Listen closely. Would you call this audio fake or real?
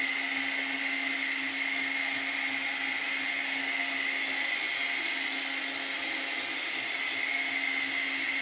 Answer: real